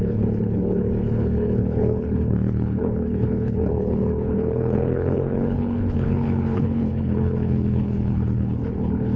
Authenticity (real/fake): fake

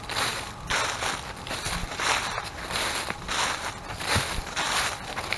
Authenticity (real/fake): real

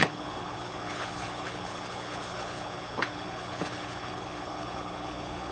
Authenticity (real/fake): fake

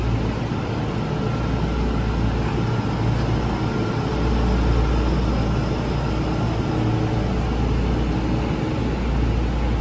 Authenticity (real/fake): real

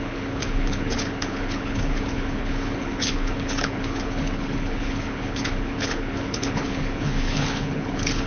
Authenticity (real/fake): fake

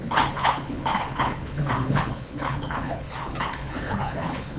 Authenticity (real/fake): fake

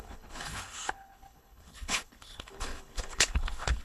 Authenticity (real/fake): fake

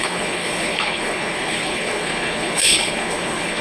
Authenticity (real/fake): fake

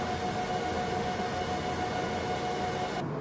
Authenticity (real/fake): real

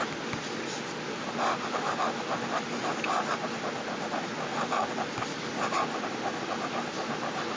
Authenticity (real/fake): real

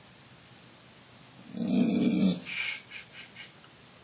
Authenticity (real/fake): real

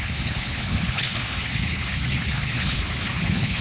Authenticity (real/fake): fake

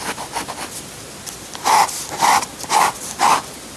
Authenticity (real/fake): real